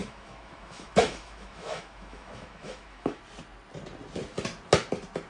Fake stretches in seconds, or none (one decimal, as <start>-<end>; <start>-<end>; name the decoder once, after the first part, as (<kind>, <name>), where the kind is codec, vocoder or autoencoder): 0.0-3.2 (autoencoder, DAC-VAE)